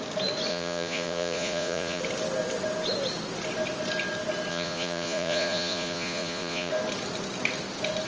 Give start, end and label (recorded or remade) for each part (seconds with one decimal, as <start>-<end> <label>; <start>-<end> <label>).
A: 0.0-0.5 recorded; 0.5-2.0 remade; 2.0-4.5 recorded; 4.5-6.7 remade; 6.7-8.1 recorded